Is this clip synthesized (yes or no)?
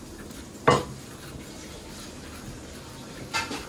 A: no